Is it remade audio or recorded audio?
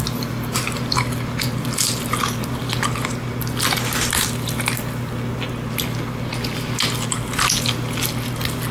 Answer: recorded